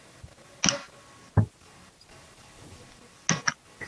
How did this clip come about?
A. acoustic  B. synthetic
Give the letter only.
A